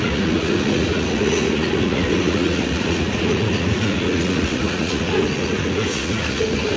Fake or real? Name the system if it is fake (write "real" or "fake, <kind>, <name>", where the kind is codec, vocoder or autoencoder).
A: fake, vocoder, Vocos